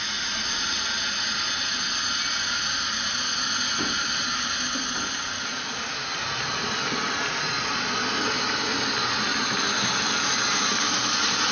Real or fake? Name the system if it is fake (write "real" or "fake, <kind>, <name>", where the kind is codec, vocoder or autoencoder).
real